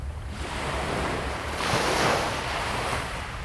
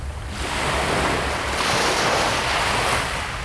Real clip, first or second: second